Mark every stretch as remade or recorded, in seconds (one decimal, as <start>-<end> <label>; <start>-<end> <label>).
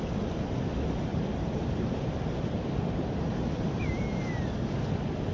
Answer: 0.0-1.1 recorded; 1.1-4.3 remade; 4.3-5.3 recorded